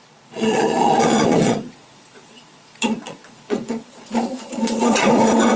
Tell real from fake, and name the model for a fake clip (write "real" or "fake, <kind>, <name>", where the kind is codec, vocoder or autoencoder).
fake, vocoder, Vocos